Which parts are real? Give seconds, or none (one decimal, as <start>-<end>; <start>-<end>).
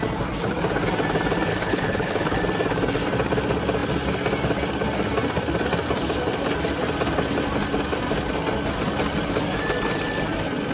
0.0-1.5; 2.4-10.7